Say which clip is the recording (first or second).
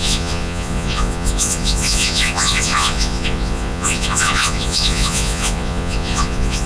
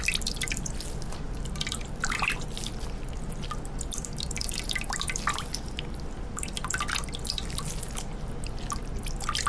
second